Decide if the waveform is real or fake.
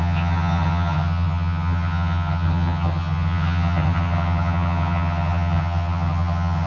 fake